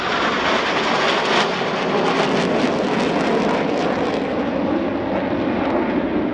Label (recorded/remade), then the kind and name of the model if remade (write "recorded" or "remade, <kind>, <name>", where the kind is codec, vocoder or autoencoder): recorded